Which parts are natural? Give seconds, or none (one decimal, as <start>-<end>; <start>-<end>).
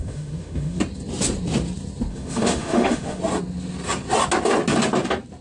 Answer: 0.8-2.1; 3.2-5.4